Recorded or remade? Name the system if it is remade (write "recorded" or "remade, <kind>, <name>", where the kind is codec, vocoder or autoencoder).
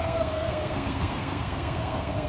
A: remade, codec, SNAC